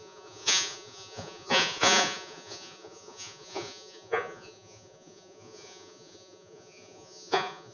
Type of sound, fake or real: fake